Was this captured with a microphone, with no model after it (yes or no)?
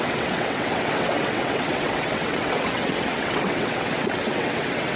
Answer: no